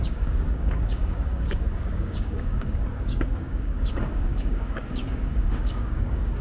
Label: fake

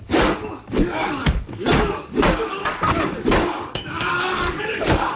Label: fake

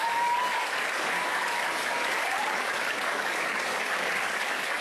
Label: fake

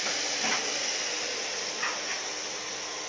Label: real